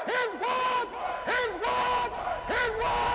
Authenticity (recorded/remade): remade